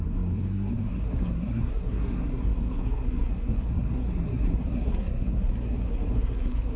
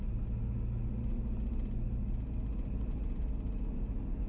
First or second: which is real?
second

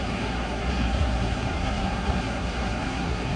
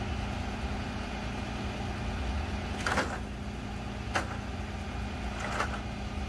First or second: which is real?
second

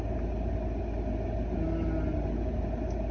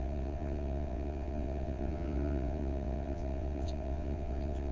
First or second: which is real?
first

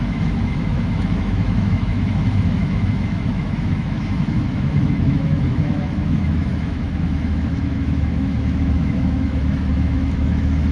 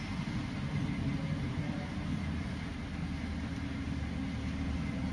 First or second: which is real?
second